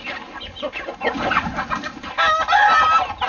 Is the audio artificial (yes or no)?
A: no